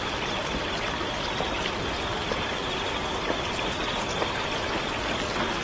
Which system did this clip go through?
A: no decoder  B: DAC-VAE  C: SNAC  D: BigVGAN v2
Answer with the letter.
A